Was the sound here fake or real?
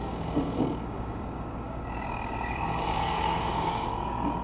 fake